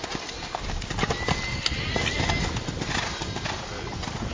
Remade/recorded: recorded